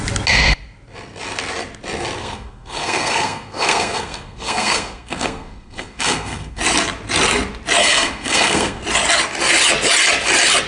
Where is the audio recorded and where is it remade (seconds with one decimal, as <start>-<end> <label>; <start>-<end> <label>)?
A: 0.0-2.2 recorded; 2.2-6.6 remade; 6.6-7.8 recorded; 7.8-8.8 remade; 8.8-10.7 recorded